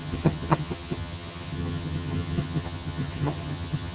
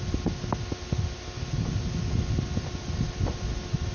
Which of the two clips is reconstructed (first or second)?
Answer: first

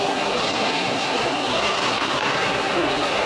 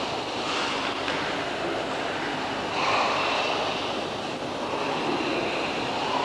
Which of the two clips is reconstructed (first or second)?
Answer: first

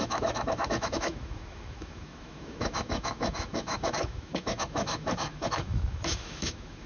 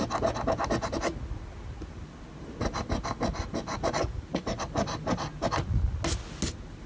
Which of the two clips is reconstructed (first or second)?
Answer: first